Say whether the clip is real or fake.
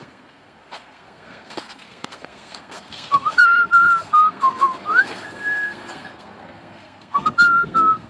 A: fake